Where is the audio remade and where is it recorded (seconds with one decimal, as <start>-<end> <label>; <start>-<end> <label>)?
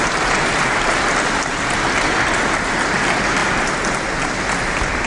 0.0-5.1 recorded